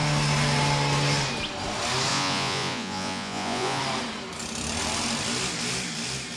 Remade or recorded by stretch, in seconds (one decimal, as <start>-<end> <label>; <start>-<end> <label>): 0.0-2.1 recorded; 2.1-3.8 remade; 3.8-6.4 recorded